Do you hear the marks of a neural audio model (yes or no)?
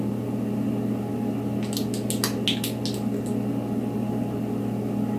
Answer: no